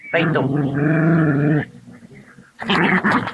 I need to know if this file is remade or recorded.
recorded